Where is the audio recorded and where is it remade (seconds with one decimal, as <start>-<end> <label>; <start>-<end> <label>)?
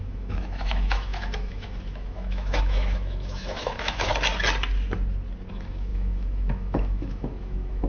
0.0-4.1 remade; 4.1-5.5 recorded; 5.5-7.9 remade